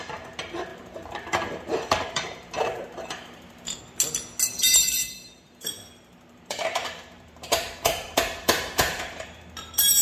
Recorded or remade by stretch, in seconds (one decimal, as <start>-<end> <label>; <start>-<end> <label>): 0.0-0.7 recorded; 0.7-3.8 remade; 3.8-5.0 recorded; 5.0-9.4 remade; 9.4-10.0 recorded